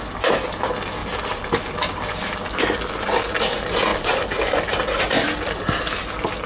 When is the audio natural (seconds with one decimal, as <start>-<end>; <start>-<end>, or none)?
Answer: 0.0-6.5